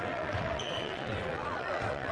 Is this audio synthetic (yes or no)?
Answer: yes